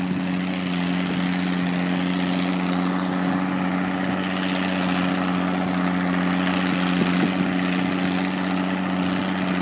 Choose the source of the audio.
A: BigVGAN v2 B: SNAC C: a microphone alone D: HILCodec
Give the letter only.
C